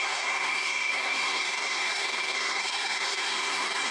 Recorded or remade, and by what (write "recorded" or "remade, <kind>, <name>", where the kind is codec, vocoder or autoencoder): remade, codec, SNAC